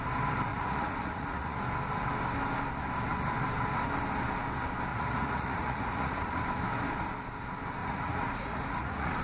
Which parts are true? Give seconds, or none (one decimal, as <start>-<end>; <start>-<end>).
0.0-0.5; 1.6-4.9; 6.4-7.8